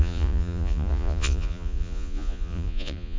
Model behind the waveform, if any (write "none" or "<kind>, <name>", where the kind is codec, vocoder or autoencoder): vocoder, Vocos